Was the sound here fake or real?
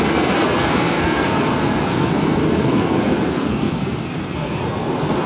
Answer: fake